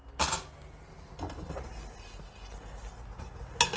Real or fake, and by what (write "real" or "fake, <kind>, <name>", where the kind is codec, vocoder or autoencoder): real